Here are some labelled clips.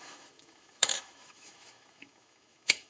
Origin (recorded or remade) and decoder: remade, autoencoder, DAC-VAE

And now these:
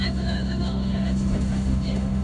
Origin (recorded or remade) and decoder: remade, autoencoder, DAC-VAE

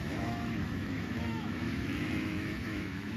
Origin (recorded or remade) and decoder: remade, autoencoder, DAC-VAE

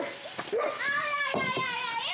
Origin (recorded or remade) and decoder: recorded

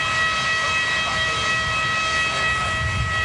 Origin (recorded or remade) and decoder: recorded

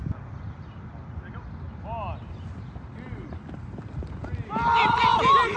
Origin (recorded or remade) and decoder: recorded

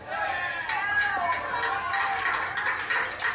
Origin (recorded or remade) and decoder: recorded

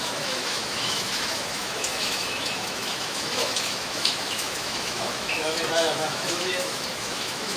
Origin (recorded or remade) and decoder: remade, autoencoder, DAC-VAE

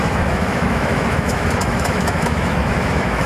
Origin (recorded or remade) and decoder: remade, autoencoder, DAC-VAE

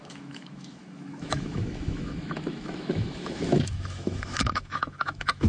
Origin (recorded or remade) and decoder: remade, autoencoder, DAC-VAE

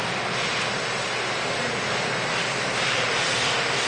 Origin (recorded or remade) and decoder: recorded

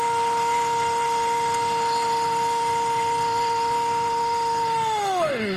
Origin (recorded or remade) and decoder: remade, autoencoder, DAC-VAE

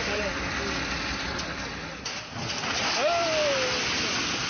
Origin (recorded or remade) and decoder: recorded